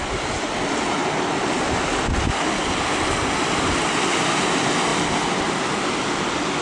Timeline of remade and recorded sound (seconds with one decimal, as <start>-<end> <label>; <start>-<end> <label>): 0.0-6.6 recorded